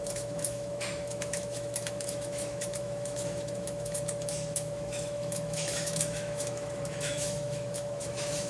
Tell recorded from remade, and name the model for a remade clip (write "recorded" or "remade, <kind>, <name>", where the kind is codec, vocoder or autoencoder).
remade, autoencoder, DAC-VAE